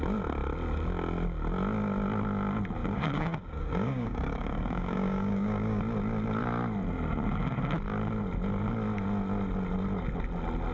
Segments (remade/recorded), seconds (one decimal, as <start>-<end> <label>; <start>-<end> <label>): 0.0-2.8 recorded; 2.8-5.8 remade; 5.8-10.7 recorded